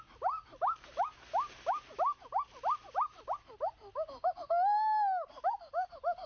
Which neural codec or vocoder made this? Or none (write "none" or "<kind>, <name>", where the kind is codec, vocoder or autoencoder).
none